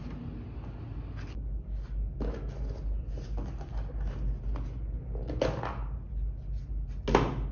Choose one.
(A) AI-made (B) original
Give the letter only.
B